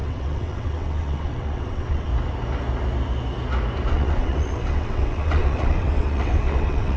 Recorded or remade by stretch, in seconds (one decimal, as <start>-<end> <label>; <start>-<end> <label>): 0.0-2.1 remade; 2.1-3.9 recorded; 3.9-7.0 remade